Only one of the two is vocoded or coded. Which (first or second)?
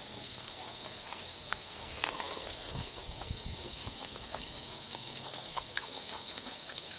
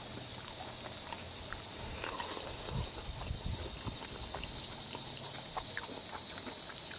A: first